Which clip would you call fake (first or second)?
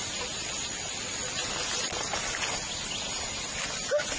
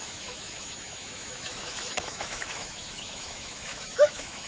second